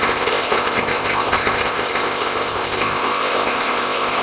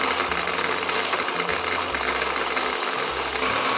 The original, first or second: second